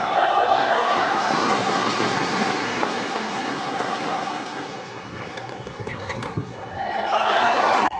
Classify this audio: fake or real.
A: fake